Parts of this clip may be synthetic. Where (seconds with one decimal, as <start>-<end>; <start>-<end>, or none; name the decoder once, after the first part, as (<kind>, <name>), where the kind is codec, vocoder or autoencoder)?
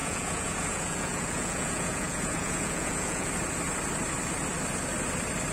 0.0-3.3 (vocoder, Vocos)